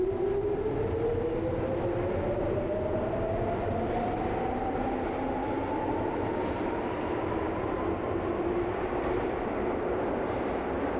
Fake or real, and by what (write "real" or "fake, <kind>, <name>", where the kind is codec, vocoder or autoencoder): real